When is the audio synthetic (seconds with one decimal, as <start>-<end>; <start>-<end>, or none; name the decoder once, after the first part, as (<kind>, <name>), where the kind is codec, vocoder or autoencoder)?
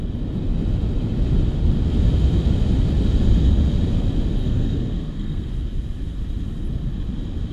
4.4-5.5 (codec, SNAC)